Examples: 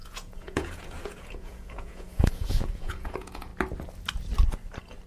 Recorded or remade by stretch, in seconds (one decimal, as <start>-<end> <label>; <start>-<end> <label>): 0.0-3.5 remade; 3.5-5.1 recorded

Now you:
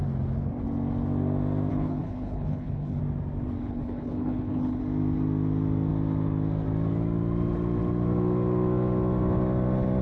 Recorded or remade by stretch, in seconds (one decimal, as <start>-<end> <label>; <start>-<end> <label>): 0.0-1.7 recorded; 1.7-3.0 remade; 3.0-3.6 recorded; 3.6-4.8 remade; 4.8-10.0 recorded

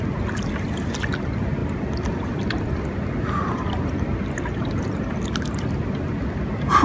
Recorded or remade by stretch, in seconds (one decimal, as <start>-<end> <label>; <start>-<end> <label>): 0.0-1.6 recorded; 1.6-5.4 remade; 5.4-6.8 recorded

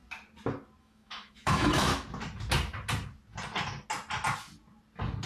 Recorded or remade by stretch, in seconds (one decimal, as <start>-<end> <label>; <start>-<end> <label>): 0.0-0.8 recorded; 0.8-1.9 remade; 1.9-5.3 recorded

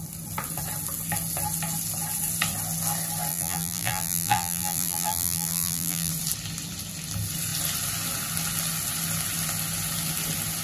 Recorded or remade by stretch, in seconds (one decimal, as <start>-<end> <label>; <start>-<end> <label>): 0.0-3.3 recorded; 3.3-6.1 remade; 6.1-10.6 recorded

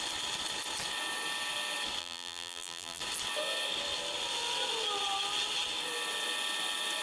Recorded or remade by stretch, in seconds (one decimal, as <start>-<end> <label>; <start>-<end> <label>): 0.0-2.0 recorded; 2.0-3.0 remade; 3.0-7.0 recorded

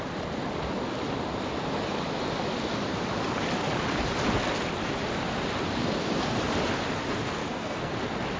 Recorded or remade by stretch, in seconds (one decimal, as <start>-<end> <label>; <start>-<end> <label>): 0.0-7.4 recorded; 7.4-7.9 remade; 7.9-8.4 recorded